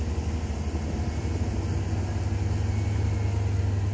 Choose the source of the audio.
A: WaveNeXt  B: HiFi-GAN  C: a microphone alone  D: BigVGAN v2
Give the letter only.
C